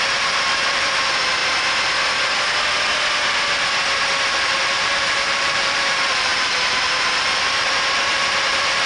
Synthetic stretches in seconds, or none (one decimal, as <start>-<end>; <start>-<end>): 0.0-1.4; 4.4-8.9